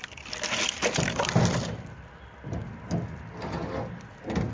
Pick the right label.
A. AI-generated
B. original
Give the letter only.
B